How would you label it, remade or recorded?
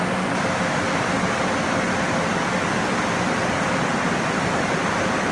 recorded